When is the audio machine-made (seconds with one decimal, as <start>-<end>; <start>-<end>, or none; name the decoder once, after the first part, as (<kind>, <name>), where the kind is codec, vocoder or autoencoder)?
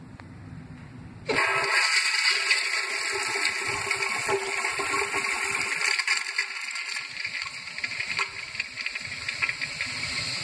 none